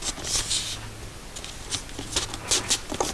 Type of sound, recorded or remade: recorded